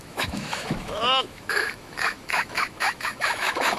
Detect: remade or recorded remade